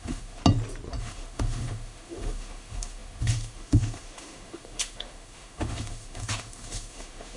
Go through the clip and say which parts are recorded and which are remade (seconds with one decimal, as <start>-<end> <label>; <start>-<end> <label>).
0.0-0.4 remade; 0.4-1.0 recorded; 1.0-7.4 remade